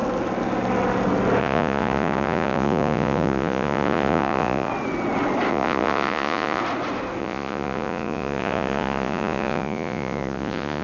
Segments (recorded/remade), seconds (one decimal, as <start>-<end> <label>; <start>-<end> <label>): 0.0-1.4 recorded; 1.4-4.7 remade; 4.7-5.5 recorded; 5.5-6.6 remade; 6.6-7.2 recorded; 7.2-10.8 remade